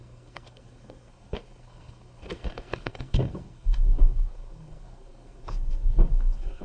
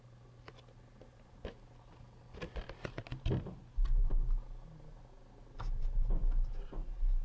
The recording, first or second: second